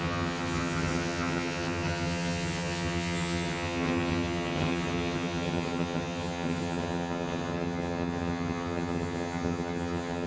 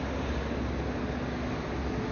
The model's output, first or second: first